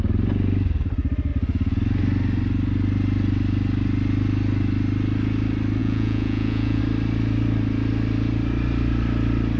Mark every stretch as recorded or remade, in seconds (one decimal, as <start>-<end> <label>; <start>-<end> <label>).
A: 0.0-5.8 recorded; 5.8-6.8 remade; 6.8-9.6 recorded